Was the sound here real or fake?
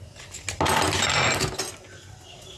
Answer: real